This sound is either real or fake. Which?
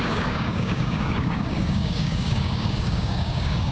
fake